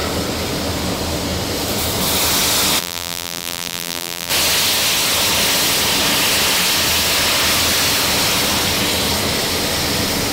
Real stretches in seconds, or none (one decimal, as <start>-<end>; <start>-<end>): 0.0-2.8; 4.3-10.3